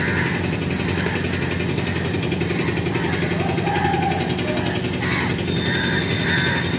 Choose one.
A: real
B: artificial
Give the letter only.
A